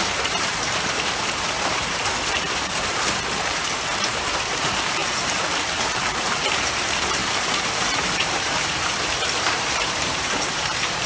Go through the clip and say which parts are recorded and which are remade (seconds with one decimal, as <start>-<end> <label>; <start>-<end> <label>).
0.0-11.1 remade